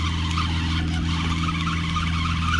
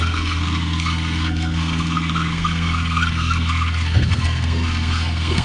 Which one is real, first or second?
first